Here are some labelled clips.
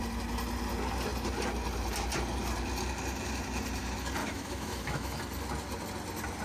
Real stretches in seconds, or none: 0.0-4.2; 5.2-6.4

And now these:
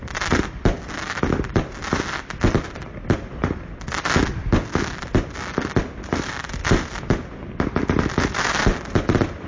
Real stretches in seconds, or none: 0.0-9.5

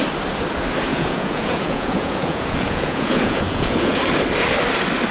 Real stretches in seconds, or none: 0.0-0.9; 4.0-5.1

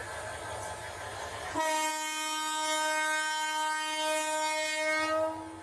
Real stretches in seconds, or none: 0.0-0.8; 1.9-5.6

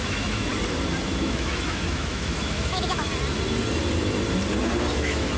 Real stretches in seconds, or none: 0.5-1.2; 3.1-4.9

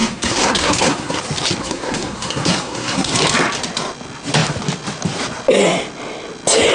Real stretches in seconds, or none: 1.2-1.6; 3.1-6.7